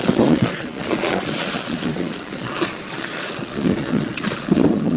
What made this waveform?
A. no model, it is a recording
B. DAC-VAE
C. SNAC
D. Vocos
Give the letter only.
D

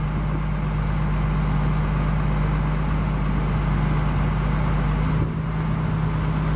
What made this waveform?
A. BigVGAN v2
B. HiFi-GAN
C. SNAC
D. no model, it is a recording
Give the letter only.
D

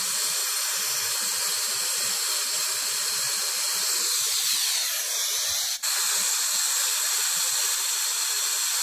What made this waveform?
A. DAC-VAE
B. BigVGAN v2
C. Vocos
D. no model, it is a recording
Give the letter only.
D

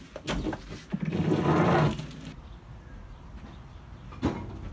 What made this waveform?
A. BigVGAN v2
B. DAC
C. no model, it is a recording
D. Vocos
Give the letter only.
C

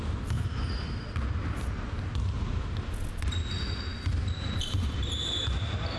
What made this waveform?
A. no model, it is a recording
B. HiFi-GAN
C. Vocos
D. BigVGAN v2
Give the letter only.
A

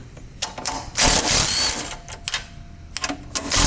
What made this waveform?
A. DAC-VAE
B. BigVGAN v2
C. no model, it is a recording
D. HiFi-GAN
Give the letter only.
C